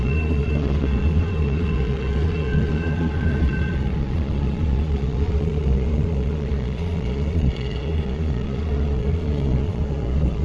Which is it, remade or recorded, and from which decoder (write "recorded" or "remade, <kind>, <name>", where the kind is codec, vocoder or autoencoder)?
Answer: remade, vocoder, Vocos